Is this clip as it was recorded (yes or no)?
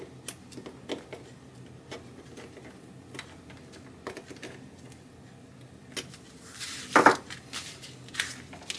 yes